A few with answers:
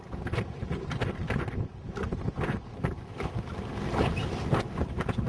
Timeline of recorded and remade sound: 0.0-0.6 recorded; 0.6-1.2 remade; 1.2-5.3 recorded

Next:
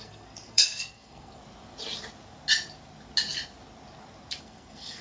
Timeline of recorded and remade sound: 0.0-1.4 remade; 1.4-4.4 recorded; 4.4-5.0 remade

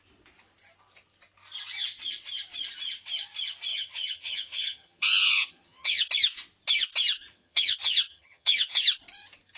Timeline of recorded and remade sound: 0.0-3.7 recorded; 3.7-6.1 remade; 6.1-7.3 recorded; 7.3-8.8 remade; 8.8-9.6 recorded